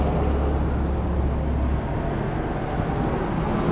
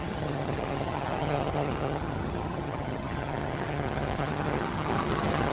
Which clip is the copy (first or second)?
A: second